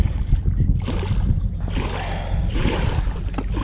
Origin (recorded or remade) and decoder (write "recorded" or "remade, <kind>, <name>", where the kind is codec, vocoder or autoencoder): recorded